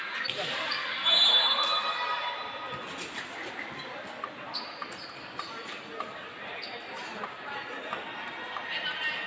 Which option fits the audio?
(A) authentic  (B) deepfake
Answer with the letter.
A